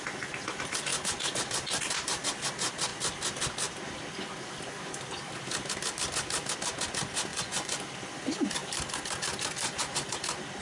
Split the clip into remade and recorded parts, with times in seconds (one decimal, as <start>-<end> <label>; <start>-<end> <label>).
0.0-7.3 recorded; 7.3-7.8 remade; 7.8-10.6 recorded